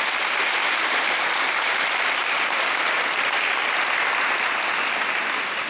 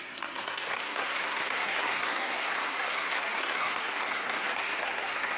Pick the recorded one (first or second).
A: first